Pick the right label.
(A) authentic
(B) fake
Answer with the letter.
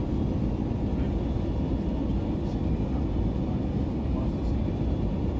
A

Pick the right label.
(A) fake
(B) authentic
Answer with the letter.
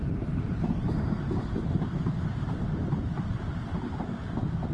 B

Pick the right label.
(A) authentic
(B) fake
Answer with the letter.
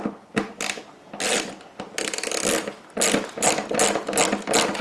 A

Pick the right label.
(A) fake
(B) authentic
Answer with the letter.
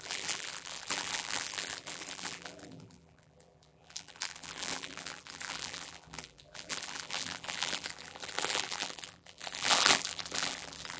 A